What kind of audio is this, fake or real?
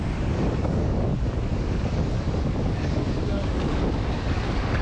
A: fake